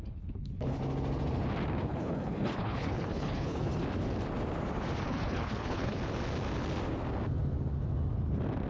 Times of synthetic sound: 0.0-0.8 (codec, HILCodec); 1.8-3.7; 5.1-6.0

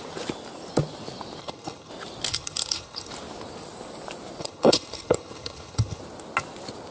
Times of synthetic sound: 1.4-1.9 (codec, HILCodec); 2.3-3.1; 4.4-6.0

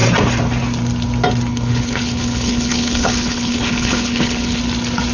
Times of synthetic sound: 1.5-4.6 (codec, HILCodec)